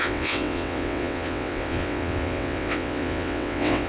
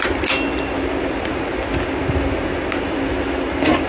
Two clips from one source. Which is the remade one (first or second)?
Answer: first